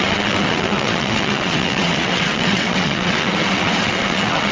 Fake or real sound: fake